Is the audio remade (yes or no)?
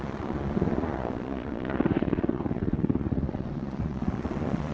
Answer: yes